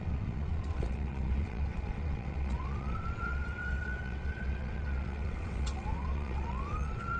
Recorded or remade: remade